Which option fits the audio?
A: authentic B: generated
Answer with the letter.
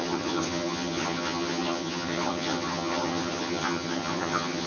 B